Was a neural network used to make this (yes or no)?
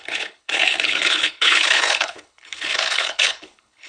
yes